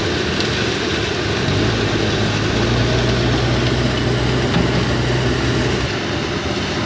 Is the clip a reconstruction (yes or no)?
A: no